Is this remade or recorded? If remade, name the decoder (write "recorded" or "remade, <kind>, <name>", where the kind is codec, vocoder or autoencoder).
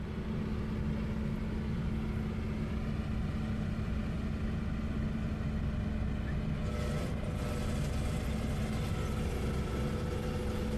recorded